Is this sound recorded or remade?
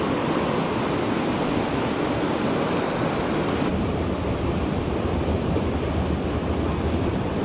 recorded